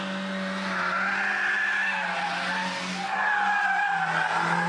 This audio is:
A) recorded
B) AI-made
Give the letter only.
A